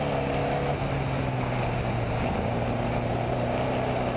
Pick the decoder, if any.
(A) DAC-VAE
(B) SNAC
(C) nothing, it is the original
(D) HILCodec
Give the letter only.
C